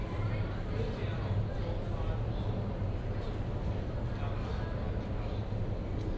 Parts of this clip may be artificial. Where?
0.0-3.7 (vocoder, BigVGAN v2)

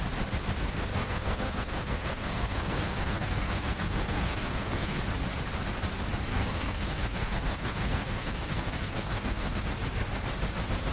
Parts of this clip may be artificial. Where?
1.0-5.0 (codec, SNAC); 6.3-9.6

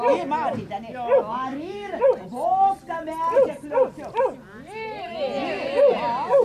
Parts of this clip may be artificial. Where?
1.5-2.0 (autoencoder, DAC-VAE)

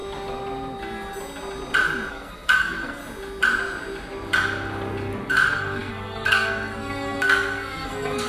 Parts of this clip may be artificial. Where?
2.1-3.0 (codec, SNAC); 5.3-8.3

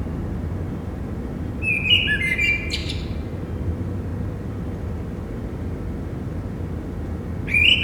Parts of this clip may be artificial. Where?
none